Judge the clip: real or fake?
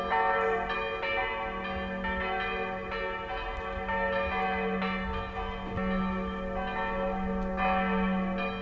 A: real